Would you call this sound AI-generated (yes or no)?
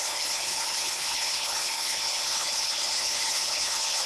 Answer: yes